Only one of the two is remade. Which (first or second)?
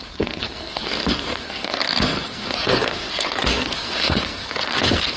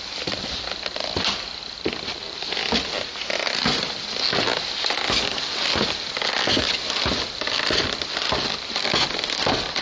first